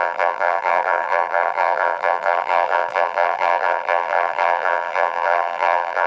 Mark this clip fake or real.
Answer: fake